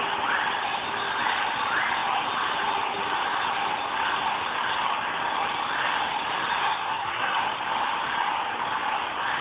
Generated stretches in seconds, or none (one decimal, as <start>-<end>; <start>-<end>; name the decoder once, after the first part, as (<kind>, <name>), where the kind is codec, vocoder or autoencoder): 6.6-7.4 (codec, SNAC)